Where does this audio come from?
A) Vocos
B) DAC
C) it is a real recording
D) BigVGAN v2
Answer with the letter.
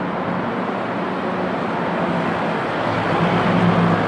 C